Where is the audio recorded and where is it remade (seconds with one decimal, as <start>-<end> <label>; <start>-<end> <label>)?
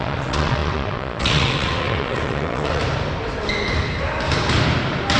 0.0-2.8 remade; 2.8-5.2 recorded